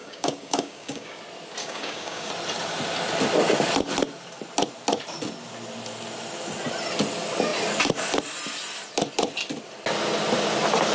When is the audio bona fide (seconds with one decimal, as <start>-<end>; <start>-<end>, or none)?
1.2-1.6; 2.3-10.9